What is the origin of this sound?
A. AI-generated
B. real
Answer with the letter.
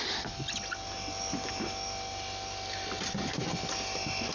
B